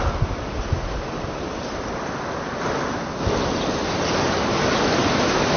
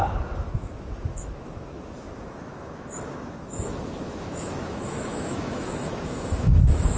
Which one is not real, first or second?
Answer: second